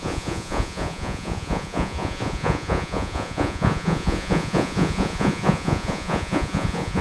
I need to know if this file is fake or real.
fake